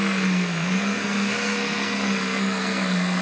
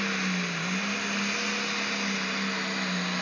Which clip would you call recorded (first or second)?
second